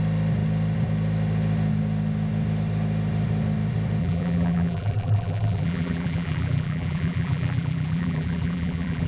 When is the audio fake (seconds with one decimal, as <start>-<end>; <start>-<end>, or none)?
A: 4.0-9.1